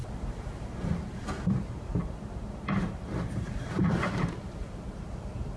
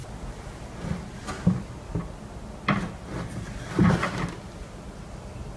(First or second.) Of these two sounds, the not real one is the first